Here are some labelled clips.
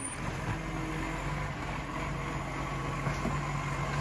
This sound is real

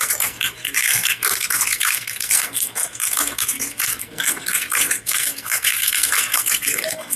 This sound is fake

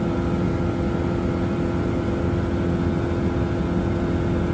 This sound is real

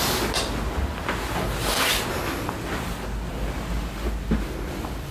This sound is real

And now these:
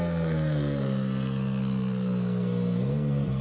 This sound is fake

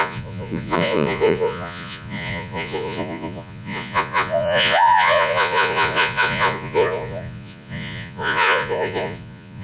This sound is fake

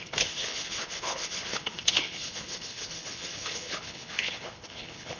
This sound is fake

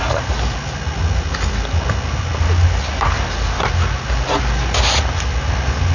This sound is real